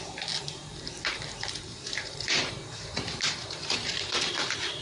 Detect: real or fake fake